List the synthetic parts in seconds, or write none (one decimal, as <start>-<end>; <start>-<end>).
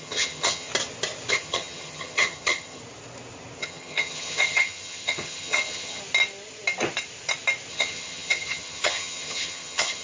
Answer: 0.0-0.7; 1.3-2.8; 3.6-6.0; 7.7-10.0